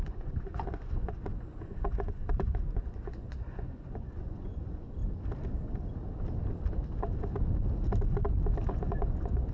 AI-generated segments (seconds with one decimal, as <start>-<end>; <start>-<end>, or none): 0.0-5.0; 8.7-9.5